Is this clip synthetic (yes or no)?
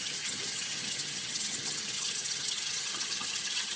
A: yes